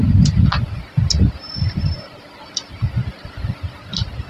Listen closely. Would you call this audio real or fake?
real